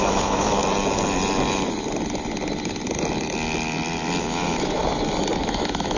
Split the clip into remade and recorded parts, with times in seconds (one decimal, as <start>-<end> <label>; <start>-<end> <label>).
0.0-0.6 remade; 0.6-4.2 recorded; 4.2-4.8 remade; 4.8-5.4 recorded; 5.4-6.0 remade